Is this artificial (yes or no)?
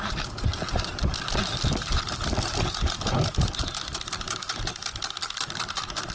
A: no